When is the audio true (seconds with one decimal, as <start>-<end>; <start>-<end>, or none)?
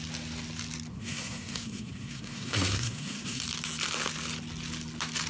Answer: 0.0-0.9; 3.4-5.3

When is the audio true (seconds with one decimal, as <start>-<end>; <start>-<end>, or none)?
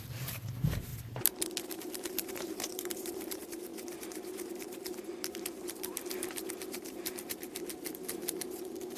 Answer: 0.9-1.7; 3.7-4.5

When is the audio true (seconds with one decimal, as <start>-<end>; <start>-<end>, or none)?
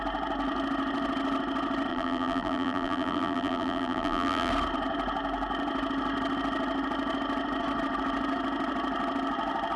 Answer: 0.0-1.9; 4.5-9.8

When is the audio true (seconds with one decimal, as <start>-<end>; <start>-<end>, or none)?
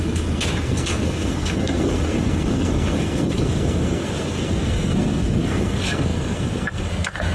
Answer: none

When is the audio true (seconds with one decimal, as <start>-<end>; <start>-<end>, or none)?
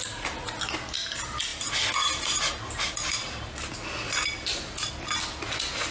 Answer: 0.0-5.9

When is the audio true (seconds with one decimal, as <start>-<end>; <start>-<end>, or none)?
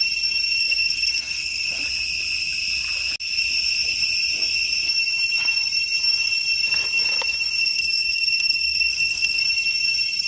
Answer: 0.0-0.6; 1.8-7.6; 9.4-10.3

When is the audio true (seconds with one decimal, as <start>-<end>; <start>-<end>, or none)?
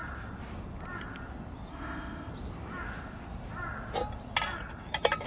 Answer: 0.0-1.7; 2.3-5.3